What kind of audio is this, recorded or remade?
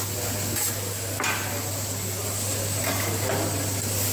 recorded